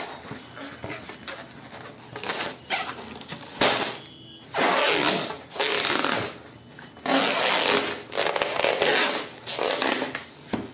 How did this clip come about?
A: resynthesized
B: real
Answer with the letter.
B